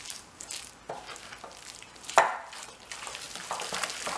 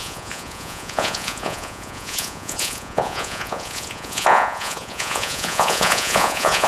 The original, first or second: first